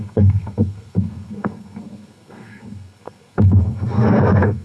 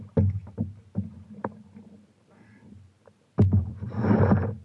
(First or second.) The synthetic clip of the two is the first